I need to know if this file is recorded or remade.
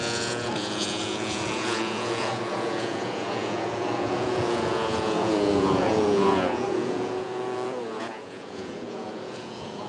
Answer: remade